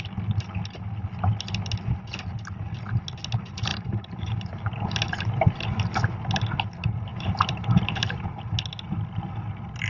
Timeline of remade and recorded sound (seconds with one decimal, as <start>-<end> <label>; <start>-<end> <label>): 0.0-3.7 recorded; 3.7-4.7 remade; 4.7-7.1 recorded; 7.1-8.4 remade; 8.4-9.9 recorded